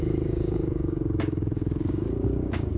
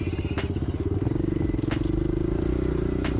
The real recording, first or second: second